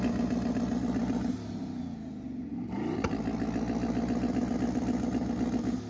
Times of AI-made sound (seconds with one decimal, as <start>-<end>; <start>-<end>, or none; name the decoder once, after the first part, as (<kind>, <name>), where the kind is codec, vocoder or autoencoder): none